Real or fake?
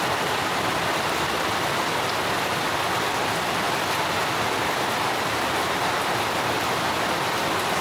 real